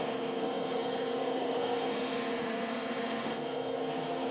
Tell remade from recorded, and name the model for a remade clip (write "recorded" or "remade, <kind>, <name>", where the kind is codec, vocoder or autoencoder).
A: remade, codec, SNAC